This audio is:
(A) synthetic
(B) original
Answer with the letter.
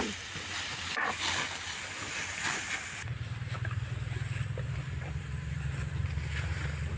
B